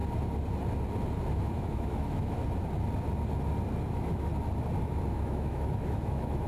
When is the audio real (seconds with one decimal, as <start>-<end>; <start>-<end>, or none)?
0.0-1.3; 2.4-3.9; 4.3-5.1